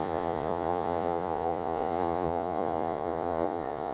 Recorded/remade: remade